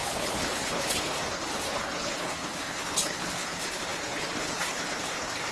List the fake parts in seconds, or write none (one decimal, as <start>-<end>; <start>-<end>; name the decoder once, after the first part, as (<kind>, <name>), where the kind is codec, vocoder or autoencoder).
0.0-5.5 (codec, HILCodec)